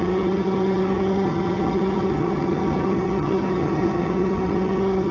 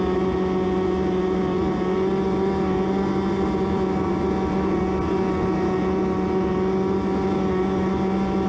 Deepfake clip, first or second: first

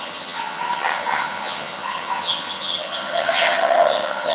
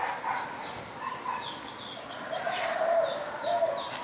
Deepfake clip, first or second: first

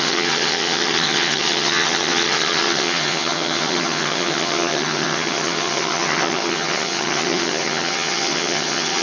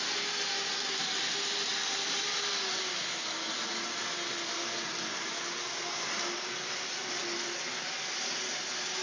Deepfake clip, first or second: first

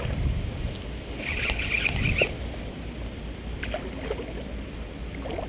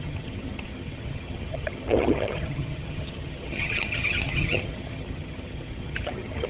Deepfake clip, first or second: second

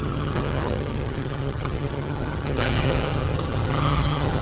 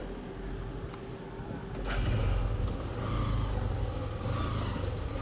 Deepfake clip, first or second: first